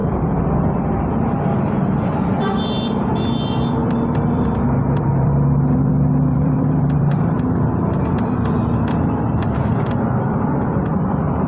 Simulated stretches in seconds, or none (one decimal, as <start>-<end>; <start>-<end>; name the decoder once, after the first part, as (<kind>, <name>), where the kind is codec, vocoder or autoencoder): 0.0-11.5 (vocoder, BigVGAN v2)